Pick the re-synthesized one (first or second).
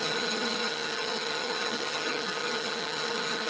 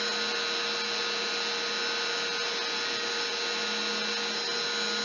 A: first